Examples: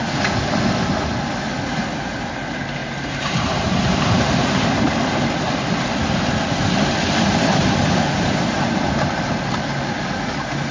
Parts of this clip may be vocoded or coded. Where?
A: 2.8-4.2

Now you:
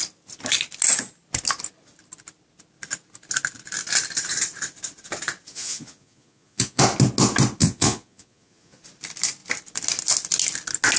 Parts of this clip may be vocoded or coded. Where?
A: 5.5-6.8; 7.6-8.8

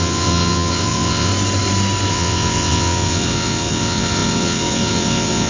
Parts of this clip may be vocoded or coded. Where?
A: 0.0-1.3; 2.1-5.5

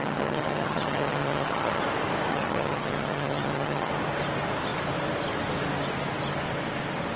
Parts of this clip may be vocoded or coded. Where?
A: 0.0-1.8; 2.3-3.9

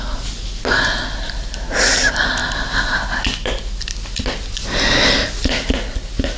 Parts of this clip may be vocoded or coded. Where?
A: none